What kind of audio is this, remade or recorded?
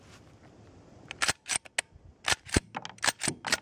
recorded